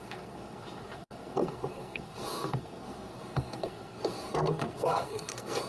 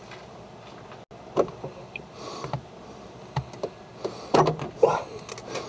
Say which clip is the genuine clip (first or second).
second